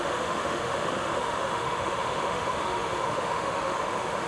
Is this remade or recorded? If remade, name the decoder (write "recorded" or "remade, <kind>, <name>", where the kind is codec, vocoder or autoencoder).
remade, autoencoder, DAC-VAE